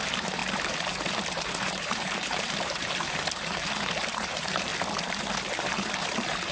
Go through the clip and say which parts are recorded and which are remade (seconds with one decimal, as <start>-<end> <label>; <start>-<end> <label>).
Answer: 0.0-0.4 remade; 0.4-1.3 recorded; 1.3-4.7 remade; 4.7-5.7 recorded; 5.7-6.5 remade